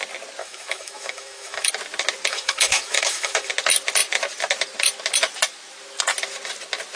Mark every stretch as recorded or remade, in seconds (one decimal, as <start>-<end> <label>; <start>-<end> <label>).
0.0-0.4 recorded; 0.4-1.7 remade; 1.7-2.3 recorded; 2.3-3.5 remade; 3.5-7.0 recorded